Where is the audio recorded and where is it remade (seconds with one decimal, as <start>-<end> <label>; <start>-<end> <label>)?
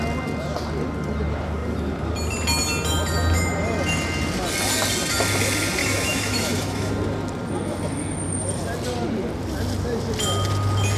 0.0-5.8 recorded; 5.8-6.9 remade; 6.9-11.0 recorded